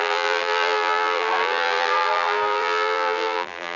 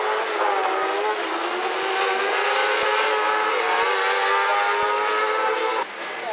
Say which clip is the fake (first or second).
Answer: first